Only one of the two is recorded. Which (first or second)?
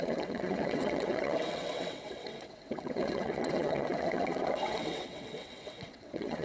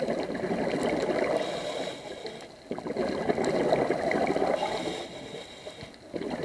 second